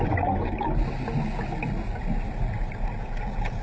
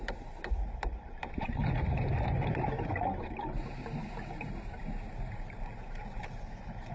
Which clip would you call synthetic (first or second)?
second